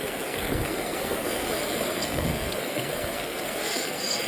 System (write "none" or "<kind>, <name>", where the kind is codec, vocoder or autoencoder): codec, SNAC